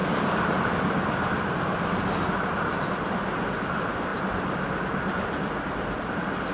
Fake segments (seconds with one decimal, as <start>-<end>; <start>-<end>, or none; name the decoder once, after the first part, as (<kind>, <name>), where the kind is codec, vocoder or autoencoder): none

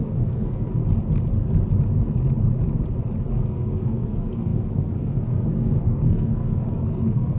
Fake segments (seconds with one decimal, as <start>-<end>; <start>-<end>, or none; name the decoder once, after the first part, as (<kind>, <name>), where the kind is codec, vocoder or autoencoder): 0.0-0.8 (codec, SNAC); 3.3-7.4

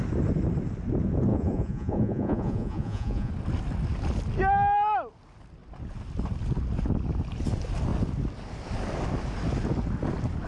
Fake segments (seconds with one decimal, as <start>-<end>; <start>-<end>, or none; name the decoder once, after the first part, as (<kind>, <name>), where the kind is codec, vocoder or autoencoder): 1.3-3.3 (vocoder, Vocos)

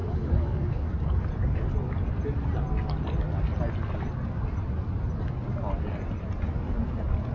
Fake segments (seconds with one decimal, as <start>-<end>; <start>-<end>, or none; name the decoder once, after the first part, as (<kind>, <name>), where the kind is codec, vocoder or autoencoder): 0.0-1.3 (codec, DAC)

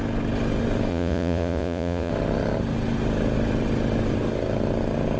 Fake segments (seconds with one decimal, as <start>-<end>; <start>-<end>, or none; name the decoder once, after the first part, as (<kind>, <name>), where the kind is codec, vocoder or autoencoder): 0.9-2.1 (vocoder, Vocos)

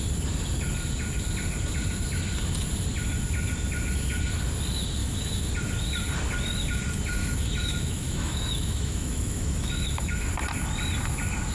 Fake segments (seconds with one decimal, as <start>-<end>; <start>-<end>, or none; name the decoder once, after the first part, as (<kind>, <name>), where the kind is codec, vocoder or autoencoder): 5.0-5.5 (autoencoder, DAC-VAE); 7.2-10.3

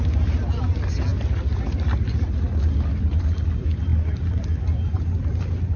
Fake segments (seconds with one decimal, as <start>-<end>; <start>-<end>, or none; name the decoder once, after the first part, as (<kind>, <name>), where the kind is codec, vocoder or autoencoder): 3.9-4.7 (vocoder, BigVGAN v2)

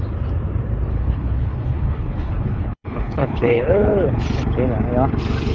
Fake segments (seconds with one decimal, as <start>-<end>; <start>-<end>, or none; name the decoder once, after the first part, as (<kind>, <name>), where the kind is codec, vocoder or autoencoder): 0.9-4.2 (codec, HILCodec)